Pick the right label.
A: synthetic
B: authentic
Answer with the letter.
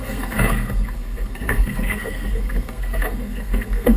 A